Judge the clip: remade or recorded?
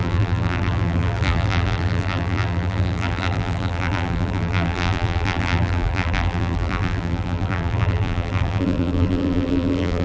remade